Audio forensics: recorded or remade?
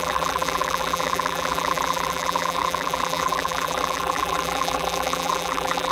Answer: remade